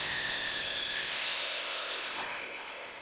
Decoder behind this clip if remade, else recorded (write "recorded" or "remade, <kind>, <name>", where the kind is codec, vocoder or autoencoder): remade, codec, ZipCodec